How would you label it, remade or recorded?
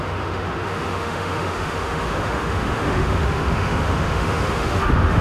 remade